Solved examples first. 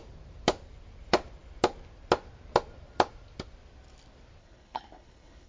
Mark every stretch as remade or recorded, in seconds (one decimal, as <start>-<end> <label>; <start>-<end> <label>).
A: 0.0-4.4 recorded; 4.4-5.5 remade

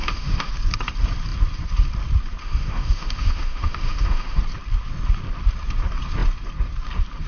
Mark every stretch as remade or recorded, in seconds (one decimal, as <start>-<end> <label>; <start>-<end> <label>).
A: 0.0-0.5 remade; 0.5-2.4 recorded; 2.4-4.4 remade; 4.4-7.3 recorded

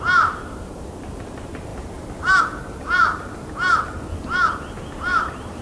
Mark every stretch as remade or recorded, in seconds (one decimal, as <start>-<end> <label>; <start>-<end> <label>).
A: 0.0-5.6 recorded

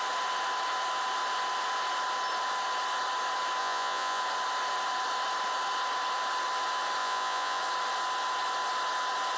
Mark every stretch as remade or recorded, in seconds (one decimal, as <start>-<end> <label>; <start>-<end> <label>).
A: 0.0-3.6 recorded; 3.6-4.2 remade; 4.2-7.0 recorded; 7.0-7.6 remade; 7.6-9.4 recorded

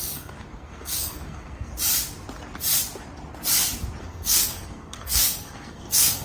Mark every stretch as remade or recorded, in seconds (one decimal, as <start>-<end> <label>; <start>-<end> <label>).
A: 0.0-1.7 remade; 1.7-4.0 recorded; 4.0-6.2 remade

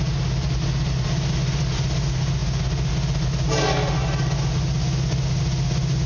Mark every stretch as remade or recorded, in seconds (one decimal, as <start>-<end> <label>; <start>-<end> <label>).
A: 0.0-6.1 recorded

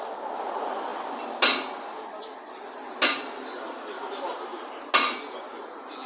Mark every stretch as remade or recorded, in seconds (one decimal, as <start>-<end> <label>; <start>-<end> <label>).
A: 0.0-6.1 recorded